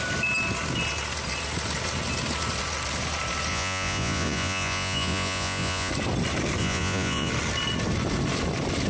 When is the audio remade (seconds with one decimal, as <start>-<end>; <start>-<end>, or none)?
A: 3.5-5.9; 6.6-7.3